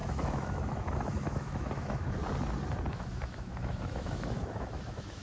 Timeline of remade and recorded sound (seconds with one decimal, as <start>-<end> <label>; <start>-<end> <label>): 0.0-2.2 remade; 2.2-2.9 recorded; 2.9-5.2 remade